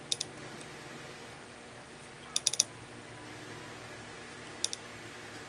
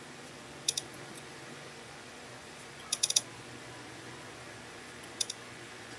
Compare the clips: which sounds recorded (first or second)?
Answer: first